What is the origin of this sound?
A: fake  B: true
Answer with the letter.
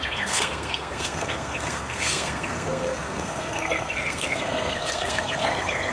A